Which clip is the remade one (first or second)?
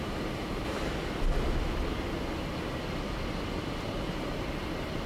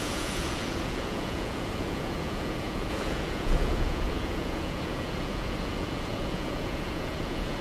second